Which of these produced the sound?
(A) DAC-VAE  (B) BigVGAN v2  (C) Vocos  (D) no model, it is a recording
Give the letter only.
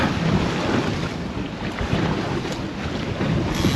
D